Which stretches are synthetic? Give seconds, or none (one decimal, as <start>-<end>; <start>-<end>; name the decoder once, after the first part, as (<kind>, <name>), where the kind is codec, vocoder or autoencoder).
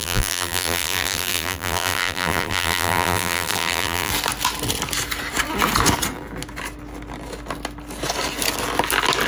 0.0-4.1 (vocoder, BigVGAN v2)